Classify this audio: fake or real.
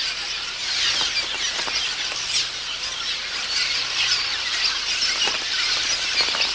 real